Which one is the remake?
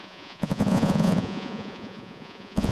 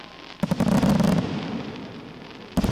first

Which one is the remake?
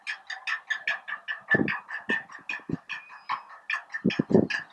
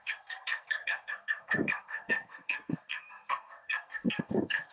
second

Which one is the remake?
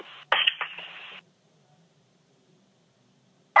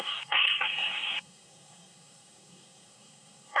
second